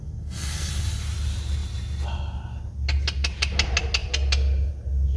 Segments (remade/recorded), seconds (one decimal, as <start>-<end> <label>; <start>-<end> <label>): 0.0-0.7 remade; 0.7-5.2 recorded